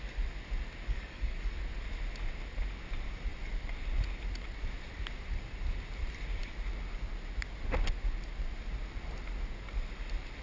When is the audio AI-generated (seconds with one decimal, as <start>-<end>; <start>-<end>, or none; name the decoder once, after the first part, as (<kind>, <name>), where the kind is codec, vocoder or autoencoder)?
0.8-1.6 (codec, DAC)